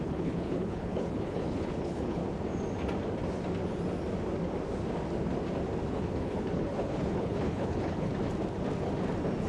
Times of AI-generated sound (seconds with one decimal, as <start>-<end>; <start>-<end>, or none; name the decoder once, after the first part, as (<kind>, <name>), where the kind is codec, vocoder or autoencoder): 0.0-2.2 (codec, HILCodec); 5.9-8.1